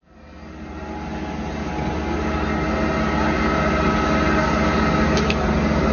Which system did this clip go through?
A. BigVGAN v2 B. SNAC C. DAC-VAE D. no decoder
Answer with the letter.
D